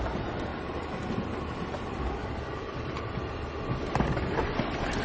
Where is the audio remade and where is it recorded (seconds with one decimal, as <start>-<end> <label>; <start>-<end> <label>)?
0.0-0.5 recorded; 0.5-3.2 remade; 3.2-5.0 recorded